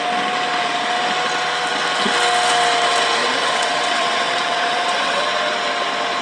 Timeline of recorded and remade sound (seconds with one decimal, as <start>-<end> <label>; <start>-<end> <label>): 0.0-3.2 recorded; 3.2-5.3 remade; 5.3-6.2 recorded